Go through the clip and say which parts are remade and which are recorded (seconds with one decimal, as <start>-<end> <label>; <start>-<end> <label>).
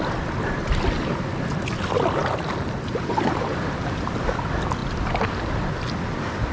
0.0-6.5 recorded